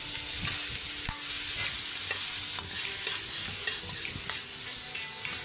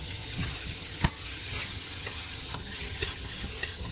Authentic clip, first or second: first